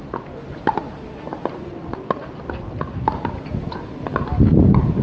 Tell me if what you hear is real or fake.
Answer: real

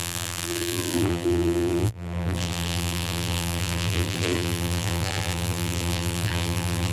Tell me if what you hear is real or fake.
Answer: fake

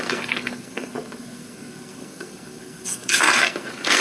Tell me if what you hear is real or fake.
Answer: fake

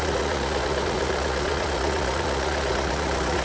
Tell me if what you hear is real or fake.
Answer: fake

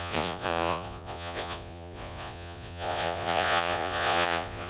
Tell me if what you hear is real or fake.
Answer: fake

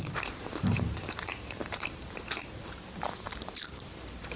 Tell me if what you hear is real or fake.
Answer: fake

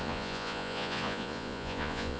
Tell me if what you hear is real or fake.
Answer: fake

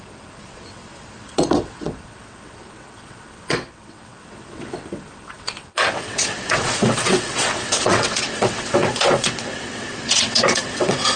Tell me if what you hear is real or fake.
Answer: fake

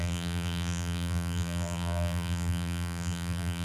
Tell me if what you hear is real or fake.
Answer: fake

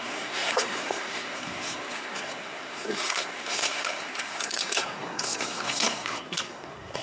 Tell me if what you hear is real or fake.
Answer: fake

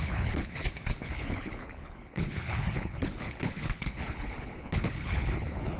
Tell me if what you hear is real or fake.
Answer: fake